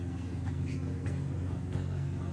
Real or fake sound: fake